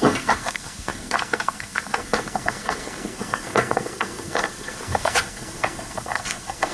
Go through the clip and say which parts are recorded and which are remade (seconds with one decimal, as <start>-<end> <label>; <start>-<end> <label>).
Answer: 0.0-6.7 remade